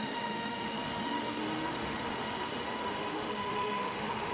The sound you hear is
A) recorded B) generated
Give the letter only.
B